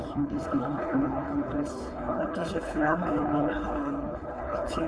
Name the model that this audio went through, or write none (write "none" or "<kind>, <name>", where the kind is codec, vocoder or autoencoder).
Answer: codec, HILCodec